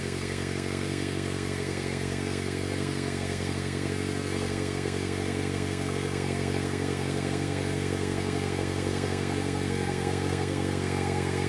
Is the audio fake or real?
fake